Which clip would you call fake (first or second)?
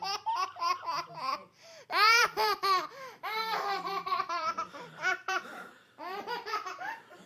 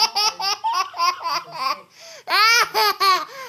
first